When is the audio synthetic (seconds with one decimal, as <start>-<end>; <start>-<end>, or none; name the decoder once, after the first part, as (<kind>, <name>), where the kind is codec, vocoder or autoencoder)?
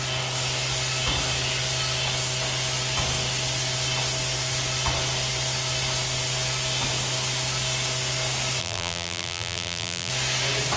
8.6-10.1 (vocoder, BigVGAN v2)